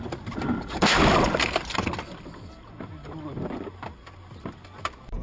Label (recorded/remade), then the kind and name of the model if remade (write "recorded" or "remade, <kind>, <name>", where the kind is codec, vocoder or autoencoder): remade, vocoder, BigVGAN v2